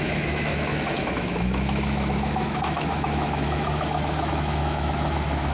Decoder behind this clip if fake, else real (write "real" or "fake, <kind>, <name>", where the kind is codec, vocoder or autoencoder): fake, autoencoder, DAC-VAE